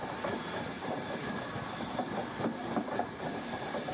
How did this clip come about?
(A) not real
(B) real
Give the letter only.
A